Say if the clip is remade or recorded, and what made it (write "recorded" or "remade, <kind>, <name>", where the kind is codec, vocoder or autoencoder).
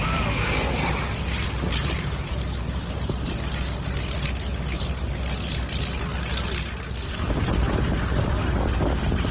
recorded